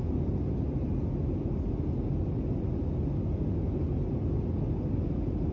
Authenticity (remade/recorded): recorded